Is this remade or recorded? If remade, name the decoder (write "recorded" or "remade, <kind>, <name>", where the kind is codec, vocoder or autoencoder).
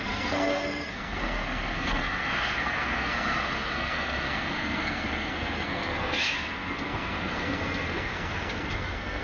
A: remade, codec, SNAC